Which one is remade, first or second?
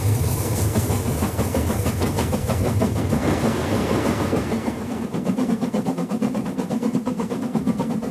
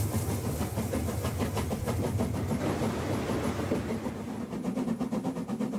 first